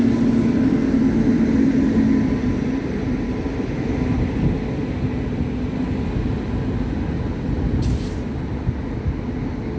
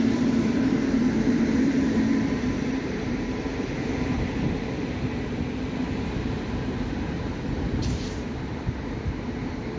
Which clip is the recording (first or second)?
first